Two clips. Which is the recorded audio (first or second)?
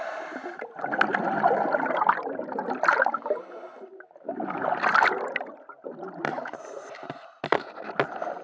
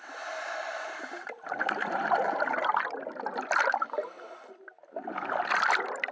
first